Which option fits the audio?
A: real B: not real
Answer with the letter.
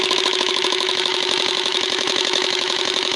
B